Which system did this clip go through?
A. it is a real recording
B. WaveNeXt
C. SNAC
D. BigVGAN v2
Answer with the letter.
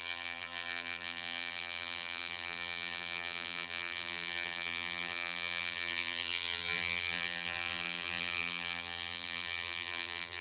D